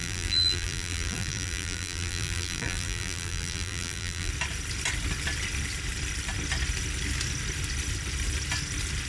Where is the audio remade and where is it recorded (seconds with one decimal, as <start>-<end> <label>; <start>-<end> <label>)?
0.0-4.3 remade; 4.3-9.1 recorded